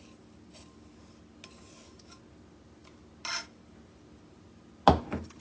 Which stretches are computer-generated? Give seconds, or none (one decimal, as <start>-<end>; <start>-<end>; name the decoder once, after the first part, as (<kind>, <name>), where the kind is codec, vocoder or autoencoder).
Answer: none